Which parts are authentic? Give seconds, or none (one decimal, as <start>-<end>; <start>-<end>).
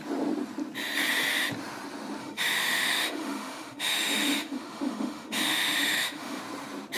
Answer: 0.0-2.2; 6.4-7.0